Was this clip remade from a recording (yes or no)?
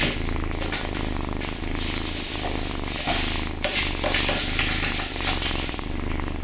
no